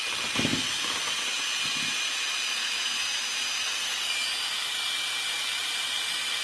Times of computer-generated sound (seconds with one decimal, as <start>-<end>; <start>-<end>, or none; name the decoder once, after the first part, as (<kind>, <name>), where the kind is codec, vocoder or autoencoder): none